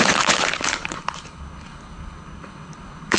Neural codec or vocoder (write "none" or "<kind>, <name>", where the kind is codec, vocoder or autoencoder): codec, HILCodec